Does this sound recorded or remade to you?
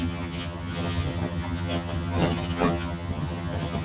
remade